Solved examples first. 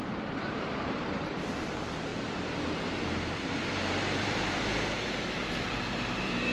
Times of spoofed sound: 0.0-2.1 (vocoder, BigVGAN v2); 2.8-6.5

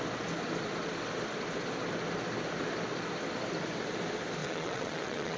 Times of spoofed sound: 4.4-5.4 (vocoder, WaveNeXt)

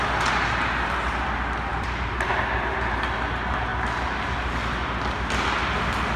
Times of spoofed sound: none

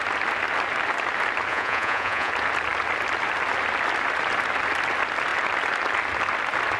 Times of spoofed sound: 1.5-2.3 (vocoder, Vocos)

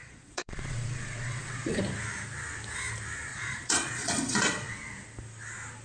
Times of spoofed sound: 0.0-1.8 (vocoder, Vocos); 3.3-4.7

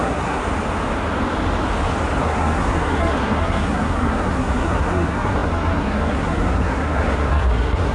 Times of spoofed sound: 0.0-0.4 (codec, SNAC); 2.2-7.9

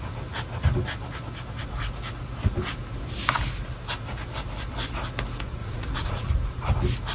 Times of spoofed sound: 5.6-6.3 (vocoder, Vocos)

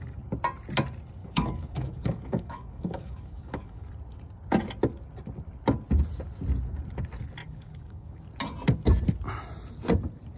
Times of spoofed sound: 1.2-3.9 (codec, DAC); 7.4-8.2